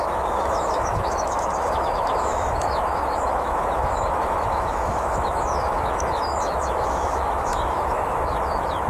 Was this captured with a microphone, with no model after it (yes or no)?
no